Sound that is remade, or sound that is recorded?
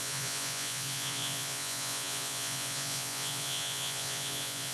remade